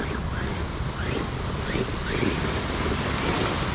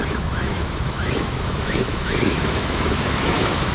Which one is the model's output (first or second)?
second